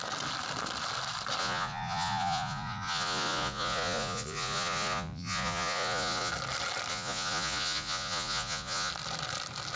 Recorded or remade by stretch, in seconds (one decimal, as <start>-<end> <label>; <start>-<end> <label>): 0.0-1.4 recorded; 1.4-6.3 remade; 6.3-6.9 recorded; 6.9-8.9 remade; 8.9-9.8 recorded